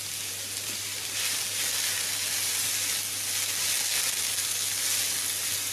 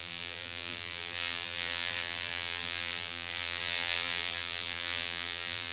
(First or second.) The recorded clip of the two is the first